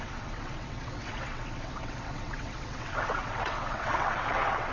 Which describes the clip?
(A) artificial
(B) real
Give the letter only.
A